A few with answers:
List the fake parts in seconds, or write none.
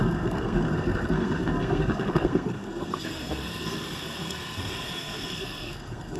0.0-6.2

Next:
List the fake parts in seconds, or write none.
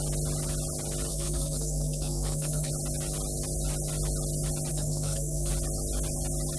1.1-2.7; 4.7-5.5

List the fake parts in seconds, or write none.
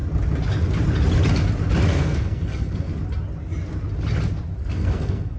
1.9-2.9; 4.7-5.4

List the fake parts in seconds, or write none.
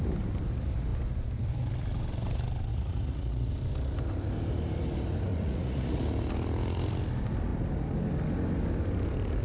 2.7-3.5; 5.3-6.0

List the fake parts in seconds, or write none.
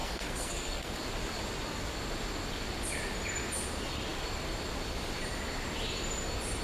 0.0-1.0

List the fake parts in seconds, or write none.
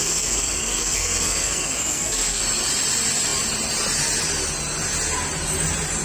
0.0-2.4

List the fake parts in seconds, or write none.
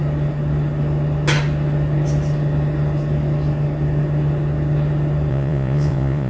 5.3-6.3